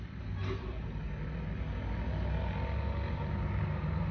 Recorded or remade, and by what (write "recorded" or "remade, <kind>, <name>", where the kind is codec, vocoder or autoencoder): recorded